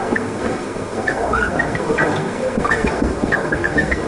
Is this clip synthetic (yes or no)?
yes